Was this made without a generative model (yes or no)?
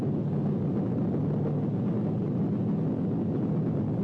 yes